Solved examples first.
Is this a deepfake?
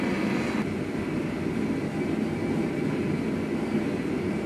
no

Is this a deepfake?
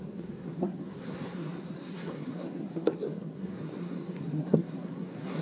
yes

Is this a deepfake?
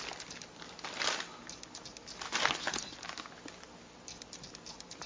no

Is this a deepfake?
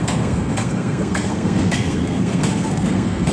yes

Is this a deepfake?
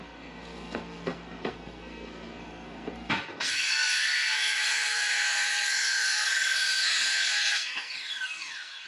yes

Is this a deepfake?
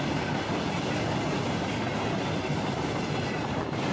no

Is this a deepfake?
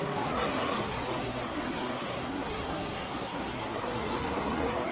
yes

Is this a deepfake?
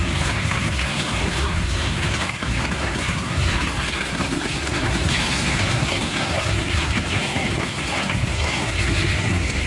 yes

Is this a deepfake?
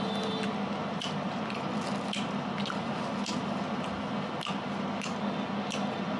no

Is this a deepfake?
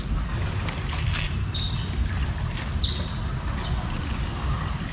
no